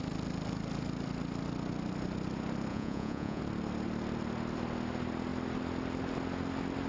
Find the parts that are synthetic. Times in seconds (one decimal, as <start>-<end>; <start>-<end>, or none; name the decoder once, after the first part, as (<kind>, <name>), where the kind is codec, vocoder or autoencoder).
2.7-3.4 (vocoder, Vocos)